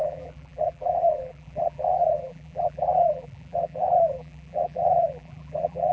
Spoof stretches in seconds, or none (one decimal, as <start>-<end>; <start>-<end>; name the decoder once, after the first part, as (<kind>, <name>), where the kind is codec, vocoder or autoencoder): 0.0-5.9 (vocoder, BigVGAN v2)